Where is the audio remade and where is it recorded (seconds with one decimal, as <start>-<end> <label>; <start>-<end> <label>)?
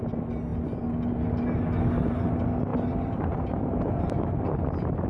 0.0-2.7 recorded; 2.7-4.0 remade; 4.0-5.1 recorded